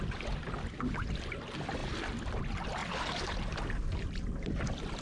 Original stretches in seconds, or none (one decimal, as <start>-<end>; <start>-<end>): 0.0-2.8; 4.4-5.0